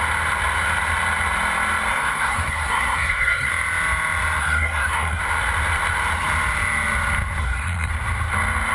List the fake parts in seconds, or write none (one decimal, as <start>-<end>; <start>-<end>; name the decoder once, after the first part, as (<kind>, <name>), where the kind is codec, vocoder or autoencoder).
1.9-3.5 (codec, SNAC); 4.4-5.2; 7.4-7.9